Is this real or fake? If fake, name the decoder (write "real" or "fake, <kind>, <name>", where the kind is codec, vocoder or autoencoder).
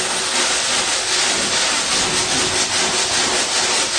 real